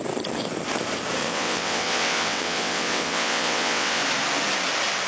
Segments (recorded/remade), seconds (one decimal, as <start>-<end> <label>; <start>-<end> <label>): 0.0-1.2 recorded; 1.2-4.0 remade; 4.0-5.1 recorded